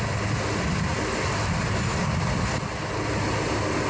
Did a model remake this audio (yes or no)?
no